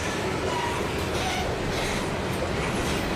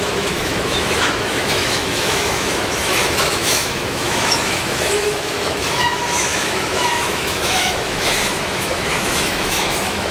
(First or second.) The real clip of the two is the first